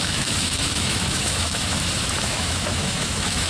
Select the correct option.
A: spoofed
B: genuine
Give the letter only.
A